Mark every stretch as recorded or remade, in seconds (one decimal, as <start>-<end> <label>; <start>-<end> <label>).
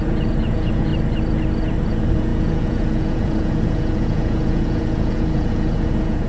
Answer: 0.0-0.9 remade; 0.9-1.9 recorded; 1.9-6.3 remade